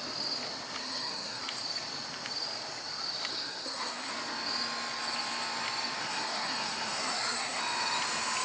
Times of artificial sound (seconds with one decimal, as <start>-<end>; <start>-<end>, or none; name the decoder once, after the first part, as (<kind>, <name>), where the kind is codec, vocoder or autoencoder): 0.8-1.4 (codec, SNAC); 3.3-4.1; 6.0-7.6